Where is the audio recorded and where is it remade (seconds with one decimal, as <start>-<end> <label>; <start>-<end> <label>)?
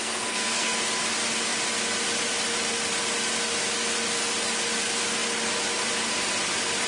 0.0-0.8 remade; 0.8-6.9 recorded